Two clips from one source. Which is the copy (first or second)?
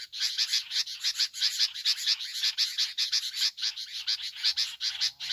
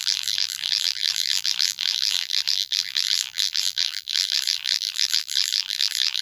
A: second